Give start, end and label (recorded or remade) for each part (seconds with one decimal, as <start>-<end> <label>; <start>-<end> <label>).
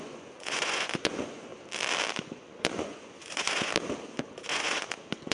0.0-1.5 remade; 1.5-2.2 recorded; 2.2-3.7 remade; 3.7-4.3 recorded; 4.3-5.3 remade